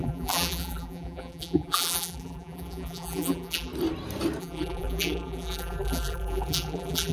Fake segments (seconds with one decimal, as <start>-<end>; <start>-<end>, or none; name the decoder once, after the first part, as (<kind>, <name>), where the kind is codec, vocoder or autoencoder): 0.0-3.7 (vocoder, BigVGAN v2); 4.4-7.1